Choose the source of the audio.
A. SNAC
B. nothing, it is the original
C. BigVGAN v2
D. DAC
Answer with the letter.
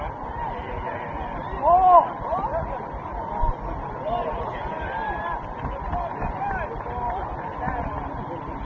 C